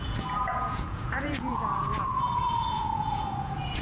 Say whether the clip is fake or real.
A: fake